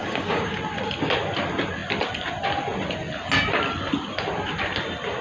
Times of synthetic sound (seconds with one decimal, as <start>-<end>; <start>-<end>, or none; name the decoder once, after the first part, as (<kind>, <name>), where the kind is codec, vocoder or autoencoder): 0.0-0.6 (codec, DAC)